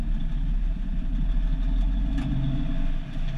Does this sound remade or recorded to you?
recorded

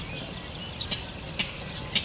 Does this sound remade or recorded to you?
recorded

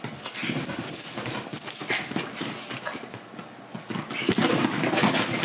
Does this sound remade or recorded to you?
recorded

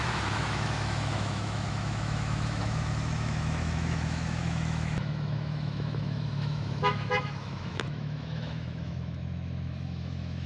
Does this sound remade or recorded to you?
remade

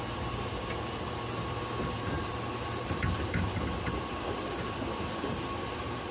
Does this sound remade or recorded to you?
recorded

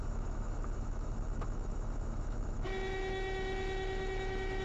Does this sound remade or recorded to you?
remade